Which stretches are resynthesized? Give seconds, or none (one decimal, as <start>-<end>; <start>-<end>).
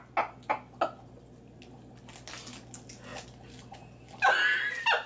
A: none